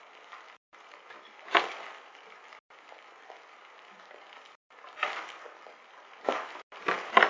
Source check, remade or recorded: remade